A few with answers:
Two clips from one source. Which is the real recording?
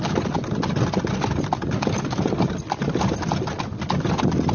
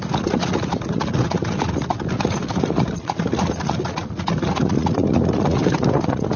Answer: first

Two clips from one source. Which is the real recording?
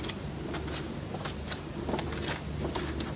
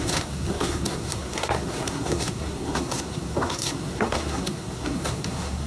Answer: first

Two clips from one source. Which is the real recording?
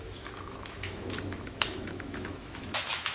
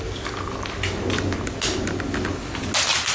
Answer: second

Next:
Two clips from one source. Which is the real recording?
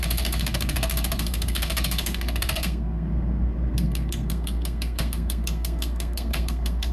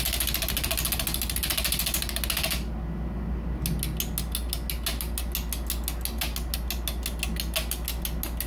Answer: second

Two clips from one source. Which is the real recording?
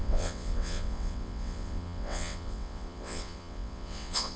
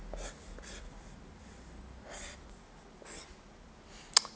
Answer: second